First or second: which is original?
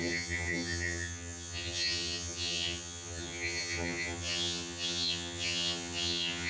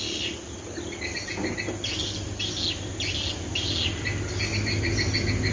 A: second